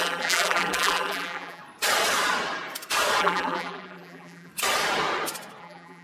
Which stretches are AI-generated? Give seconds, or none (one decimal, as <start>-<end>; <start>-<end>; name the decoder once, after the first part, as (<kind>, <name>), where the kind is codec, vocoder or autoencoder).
0.0-1.6 (vocoder, BigVGAN v2); 3.2-4.5; 5.6-6.0